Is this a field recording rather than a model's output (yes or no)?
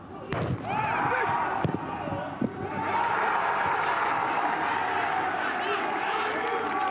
yes